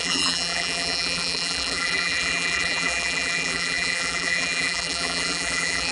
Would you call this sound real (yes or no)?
no